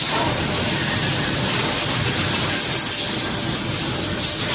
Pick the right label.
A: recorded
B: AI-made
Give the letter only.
A